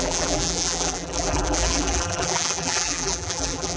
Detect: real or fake fake